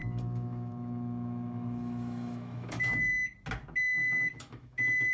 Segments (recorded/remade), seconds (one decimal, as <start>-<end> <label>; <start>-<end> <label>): 0.0-3.1 remade; 3.1-4.0 recorded; 4.0-5.1 remade